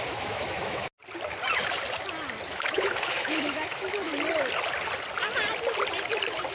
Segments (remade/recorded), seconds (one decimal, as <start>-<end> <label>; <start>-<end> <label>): 0.0-0.9 remade; 0.9-2.5 recorded; 2.5-4.1 remade; 4.1-6.5 recorded